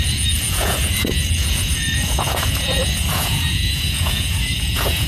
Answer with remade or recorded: remade